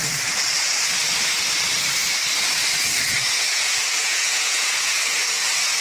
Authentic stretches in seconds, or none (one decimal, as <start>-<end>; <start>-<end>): 0.0-3.2; 5.0-5.8